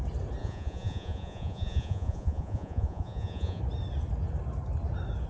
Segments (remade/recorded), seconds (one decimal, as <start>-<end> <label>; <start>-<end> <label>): 0.0-0.4 recorded; 0.4-3.6 remade; 3.6-5.3 recorded